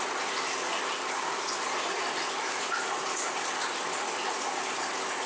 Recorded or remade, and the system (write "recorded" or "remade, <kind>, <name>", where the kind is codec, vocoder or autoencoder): recorded